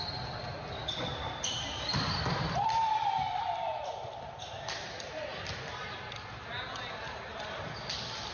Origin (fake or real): fake